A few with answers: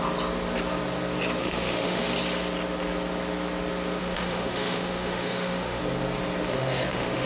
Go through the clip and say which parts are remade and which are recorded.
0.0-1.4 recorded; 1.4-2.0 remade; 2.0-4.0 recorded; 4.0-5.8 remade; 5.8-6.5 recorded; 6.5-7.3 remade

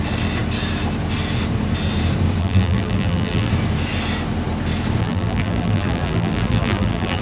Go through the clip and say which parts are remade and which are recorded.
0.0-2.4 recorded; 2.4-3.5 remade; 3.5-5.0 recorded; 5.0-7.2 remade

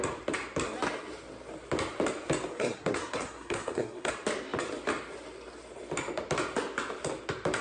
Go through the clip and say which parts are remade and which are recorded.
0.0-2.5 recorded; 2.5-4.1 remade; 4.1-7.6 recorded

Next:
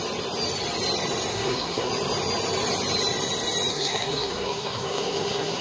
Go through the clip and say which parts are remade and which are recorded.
0.0-1.3 recorded; 1.3-1.9 remade; 1.9-3.7 recorded; 3.7-5.6 remade

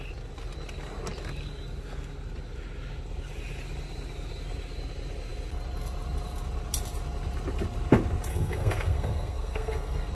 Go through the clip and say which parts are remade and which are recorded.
0.0-8.3 recorded; 8.3-10.1 remade

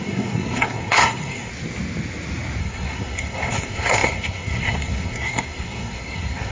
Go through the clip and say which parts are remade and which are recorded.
0.0-1.5 remade; 1.5-2.6 recorded; 2.6-6.5 remade